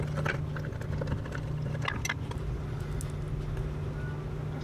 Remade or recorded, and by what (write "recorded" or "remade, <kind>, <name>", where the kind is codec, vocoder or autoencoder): recorded